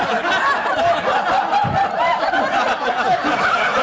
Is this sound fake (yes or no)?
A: no